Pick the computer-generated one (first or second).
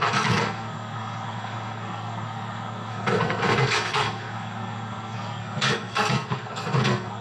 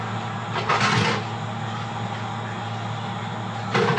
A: first